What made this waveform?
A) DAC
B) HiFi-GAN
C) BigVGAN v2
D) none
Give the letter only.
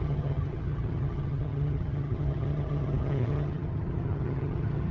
B